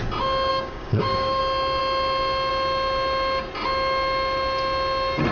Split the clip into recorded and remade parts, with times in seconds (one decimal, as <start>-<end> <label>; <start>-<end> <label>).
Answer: 0.0-0.5 recorded; 0.5-1.4 remade; 1.4-5.3 recorded